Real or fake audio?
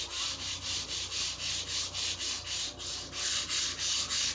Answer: real